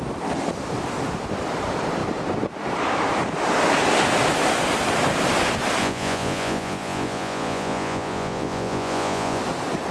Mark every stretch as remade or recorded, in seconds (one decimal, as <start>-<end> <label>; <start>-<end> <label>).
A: 0.0-5.8 recorded; 5.8-9.4 remade; 9.4-9.9 recorded

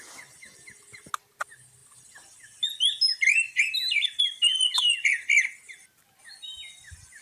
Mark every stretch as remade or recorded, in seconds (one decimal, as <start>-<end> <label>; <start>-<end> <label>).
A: 0.0-7.2 recorded

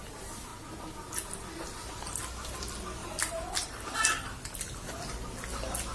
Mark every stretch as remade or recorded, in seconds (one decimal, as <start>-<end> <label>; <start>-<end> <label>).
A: 0.0-3.0 recorded; 3.0-3.8 remade; 3.8-5.9 recorded

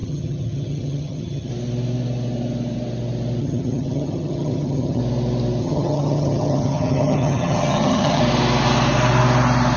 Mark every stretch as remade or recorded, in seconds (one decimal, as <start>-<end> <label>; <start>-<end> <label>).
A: 0.0-1.5 remade; 1.5-3.4 recorded; 3.4-5.0 remade; 5.0-5.6 recorded; 5.6-8.2 remade; 8.2-9.8 recorded

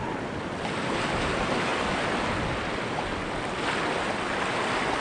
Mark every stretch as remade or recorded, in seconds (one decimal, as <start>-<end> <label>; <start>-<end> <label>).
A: 0.0-5.0 recorded

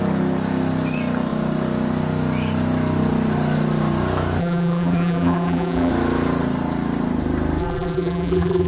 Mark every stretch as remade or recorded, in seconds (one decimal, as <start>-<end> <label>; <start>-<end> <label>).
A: 0.0-4.4 recorded; 4.4-5.9 remade; 5.9-7.6 recorded; 7.6-8.7 remade

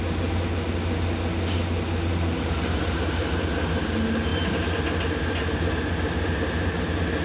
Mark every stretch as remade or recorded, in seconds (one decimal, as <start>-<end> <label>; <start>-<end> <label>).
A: 0.0-7.2 recorded